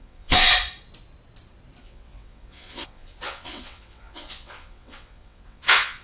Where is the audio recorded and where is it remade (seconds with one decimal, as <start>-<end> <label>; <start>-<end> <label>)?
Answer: 0.0-0.5 remade; 0.5-1.8 recorded; 1.8-6.0 remade